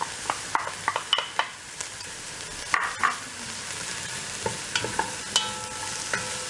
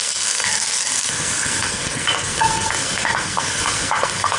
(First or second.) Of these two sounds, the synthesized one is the second